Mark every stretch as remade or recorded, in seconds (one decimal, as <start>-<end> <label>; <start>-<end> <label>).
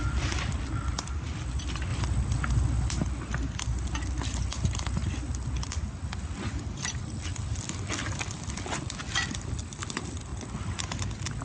0.0-11.4 recorded